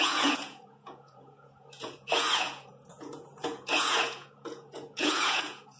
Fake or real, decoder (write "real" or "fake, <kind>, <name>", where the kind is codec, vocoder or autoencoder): fake, vocoder, Vocos